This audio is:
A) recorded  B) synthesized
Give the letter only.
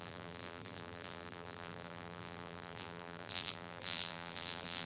B